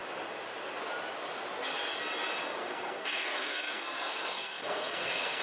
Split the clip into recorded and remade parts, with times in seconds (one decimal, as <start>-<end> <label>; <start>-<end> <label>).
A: 0.0-2.6 recorded; 2.6-5.4 remade